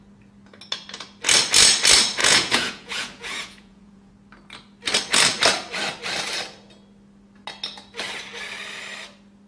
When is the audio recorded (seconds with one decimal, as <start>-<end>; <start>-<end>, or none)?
0.0-2.2; 4.1-9.5